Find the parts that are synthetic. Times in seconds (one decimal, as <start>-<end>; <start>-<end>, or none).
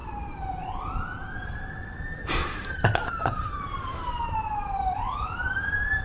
0.0-2.4; 3.1-6.0